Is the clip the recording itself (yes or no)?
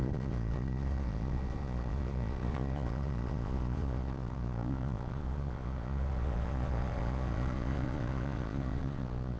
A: no